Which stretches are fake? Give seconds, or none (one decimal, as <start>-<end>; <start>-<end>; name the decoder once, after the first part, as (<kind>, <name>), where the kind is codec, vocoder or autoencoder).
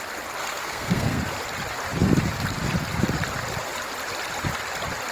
0.4-1.2 (codec, SNAC)